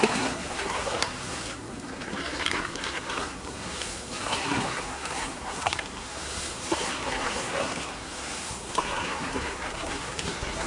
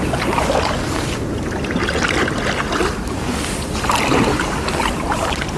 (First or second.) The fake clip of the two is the first